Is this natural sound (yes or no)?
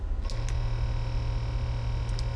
yes